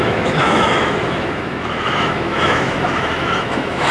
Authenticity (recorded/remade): remade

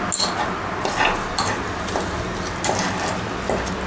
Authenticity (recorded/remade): recorded